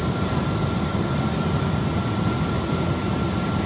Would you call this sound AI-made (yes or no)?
no